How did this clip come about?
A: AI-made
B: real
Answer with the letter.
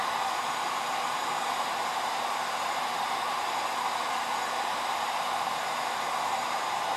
A